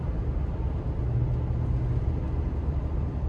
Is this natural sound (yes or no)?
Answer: yes